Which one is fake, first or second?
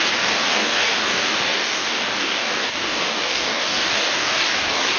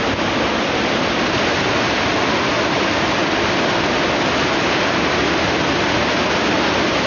first